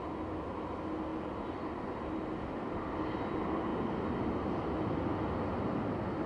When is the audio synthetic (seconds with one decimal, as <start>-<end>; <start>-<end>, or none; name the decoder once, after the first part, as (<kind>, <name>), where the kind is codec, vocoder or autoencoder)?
3.7-5.8 (vocoder, BigVGAN v2)